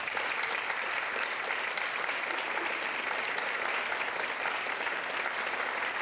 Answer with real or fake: fake